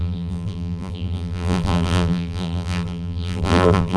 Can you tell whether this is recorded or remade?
remade